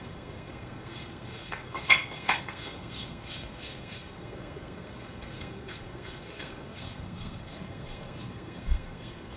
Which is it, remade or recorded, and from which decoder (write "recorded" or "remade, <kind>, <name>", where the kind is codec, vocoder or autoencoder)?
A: remade, codec, SNAC